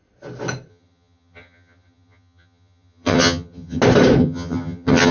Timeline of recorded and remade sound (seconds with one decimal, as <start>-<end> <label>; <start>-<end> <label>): 0.0-0.7 recorded; 0.7-3.8 remade; 3.8-4.2 recorded; 4.2-5.1 remade